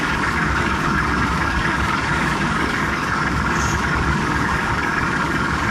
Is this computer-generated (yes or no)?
yes